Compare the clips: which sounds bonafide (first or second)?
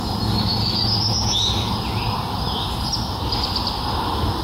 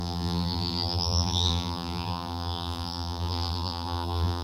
first